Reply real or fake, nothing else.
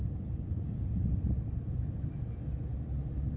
real